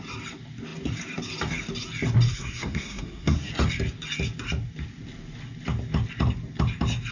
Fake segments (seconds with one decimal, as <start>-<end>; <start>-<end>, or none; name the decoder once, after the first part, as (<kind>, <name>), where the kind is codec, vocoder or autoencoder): 2.3-3.5 (codec, SNAC)